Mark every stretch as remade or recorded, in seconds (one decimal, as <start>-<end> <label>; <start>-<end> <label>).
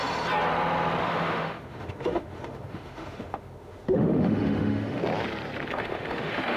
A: 0.0-1.0 recorded; 1.0-5.0 remade; 5.0-5.7 recorded; 5.7-6.6 remade